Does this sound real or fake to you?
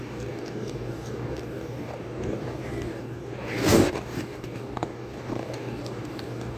fake